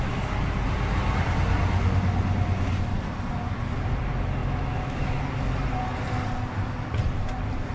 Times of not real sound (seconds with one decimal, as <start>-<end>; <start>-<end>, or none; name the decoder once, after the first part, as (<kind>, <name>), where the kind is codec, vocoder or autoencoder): 4.4-5.2 (autoencoder, DAC-VAE)